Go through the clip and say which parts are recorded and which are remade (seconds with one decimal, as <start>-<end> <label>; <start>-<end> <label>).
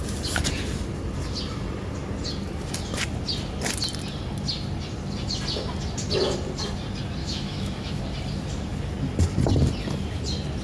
0.0-7.2 recorded; 7.2-8.0 remade; 8.0-10.6 recorded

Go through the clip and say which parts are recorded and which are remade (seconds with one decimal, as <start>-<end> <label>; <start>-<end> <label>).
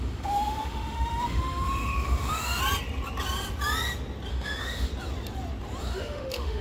0.0-2.6 remade; 2.6-4.3 recorded; 4.3-4.9 remade; 4.9-5.8 recorded; 5.8-6.6 remade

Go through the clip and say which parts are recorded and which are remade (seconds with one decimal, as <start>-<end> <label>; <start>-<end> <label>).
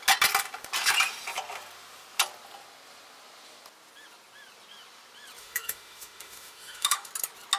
0.0-5.4 recorded; 5.4-7.1 remade; 7.1-7.6 recorded